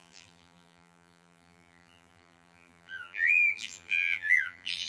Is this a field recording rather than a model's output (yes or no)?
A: no